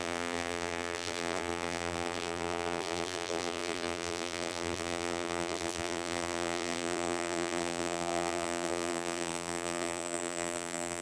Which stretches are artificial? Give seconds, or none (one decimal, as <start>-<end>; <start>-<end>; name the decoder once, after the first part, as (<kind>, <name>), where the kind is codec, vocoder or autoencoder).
0.0-11.0 (vocoder, BigVGAN v2)